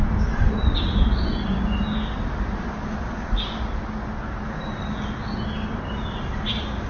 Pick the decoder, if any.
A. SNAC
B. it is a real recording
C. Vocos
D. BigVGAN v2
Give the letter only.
B